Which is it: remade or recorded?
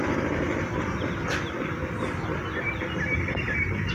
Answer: recorded